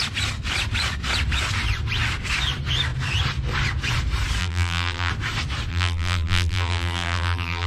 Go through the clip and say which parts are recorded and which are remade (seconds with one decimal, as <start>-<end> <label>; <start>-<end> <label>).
0.0-4.4 recorded; 4.4-5.1 remade; 5.1-5.7 recorded; 5.7-7.7 remade